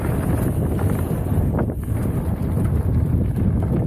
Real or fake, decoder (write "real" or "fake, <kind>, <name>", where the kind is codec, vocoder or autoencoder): real